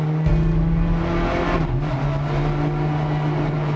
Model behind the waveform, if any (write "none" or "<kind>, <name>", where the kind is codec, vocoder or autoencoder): none